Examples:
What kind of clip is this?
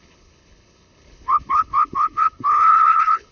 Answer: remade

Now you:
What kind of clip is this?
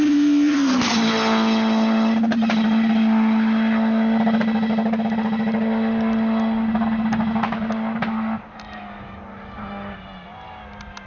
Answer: recorded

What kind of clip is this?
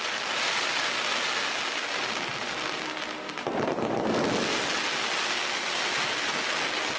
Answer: recorded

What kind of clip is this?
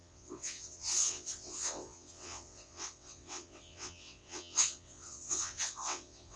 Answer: remade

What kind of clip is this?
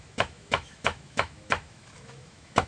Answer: remade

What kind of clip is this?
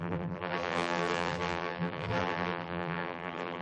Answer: remade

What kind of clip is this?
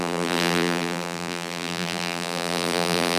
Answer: remade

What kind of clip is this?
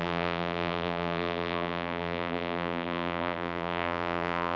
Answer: remade